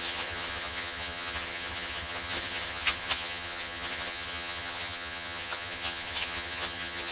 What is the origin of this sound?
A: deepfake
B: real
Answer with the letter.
A